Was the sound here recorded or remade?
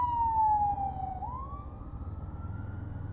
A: recorded